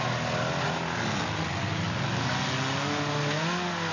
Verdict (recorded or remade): recorded